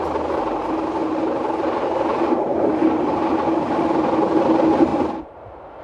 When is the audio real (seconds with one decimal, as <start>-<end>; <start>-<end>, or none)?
0.0-1.0; 3.3-4.9